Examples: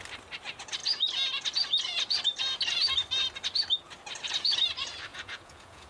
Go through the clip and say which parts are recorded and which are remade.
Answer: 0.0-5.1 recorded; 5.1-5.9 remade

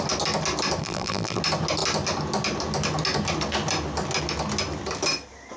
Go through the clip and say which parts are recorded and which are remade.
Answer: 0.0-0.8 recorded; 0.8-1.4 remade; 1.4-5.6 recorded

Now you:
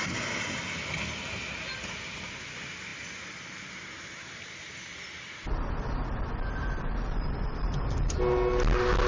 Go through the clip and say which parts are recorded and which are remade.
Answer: 0.0-9.1 recorded

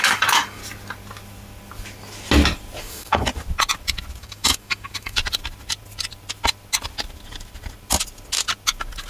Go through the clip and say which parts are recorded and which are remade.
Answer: 0.0-0.6 remade; 0.6-2.8 recorded; 2.8-3.3 remade; 3.3-4.2 recorded; 4.2-5.2 remade; 5.2-9.1 recorded

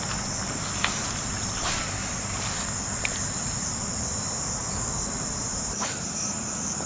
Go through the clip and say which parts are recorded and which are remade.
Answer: 0.0-5.5 recorded; 5.5-6.4 remade; 6.4-6.9 recorded

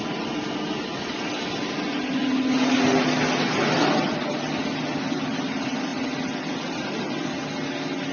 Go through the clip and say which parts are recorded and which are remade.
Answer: 0.0-8.1 recorded

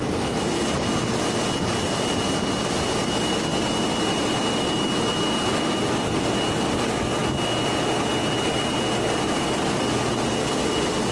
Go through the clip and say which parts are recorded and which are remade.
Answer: 0.0-11.1 recorded